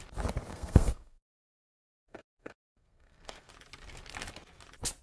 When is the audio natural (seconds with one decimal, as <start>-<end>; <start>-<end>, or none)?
0.0-0.5; 3.5-5.0